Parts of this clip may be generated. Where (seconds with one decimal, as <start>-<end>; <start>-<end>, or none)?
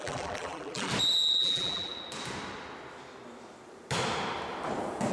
0.0-0.9; 1.4-1.9